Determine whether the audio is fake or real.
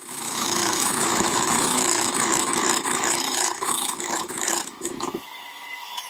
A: fake